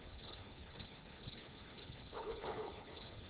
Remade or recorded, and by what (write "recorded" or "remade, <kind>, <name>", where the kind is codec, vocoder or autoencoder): remade, codec, HILCodec